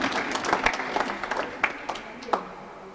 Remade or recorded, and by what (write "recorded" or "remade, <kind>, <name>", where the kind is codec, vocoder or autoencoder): recorded